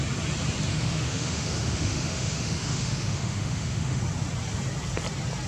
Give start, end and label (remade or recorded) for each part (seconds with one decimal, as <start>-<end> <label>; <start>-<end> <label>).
0.0-0.7 recorded; 0.7-4.0 remade; 4.0-5.5 recorded